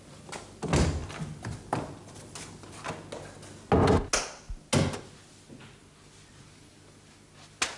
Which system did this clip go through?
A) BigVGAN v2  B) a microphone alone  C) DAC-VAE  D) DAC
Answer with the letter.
B